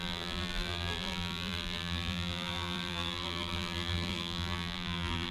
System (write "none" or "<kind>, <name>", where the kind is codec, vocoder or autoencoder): vocoder, BigVGAN v2